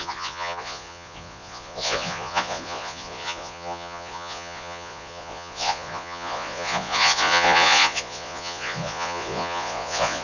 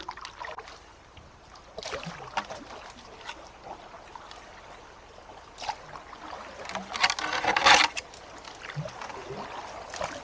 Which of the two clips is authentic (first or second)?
second